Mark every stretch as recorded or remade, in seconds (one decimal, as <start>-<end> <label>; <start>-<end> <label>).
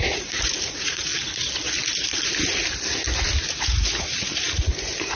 0.0-1.1 remade; 1.1-3.6 recorded; 3.6-5.2 remade